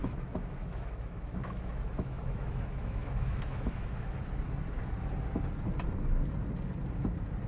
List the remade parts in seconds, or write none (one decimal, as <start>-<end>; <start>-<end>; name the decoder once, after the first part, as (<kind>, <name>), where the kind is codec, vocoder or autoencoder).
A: 0.0-4.2 (autoencoder, DAC-VAE)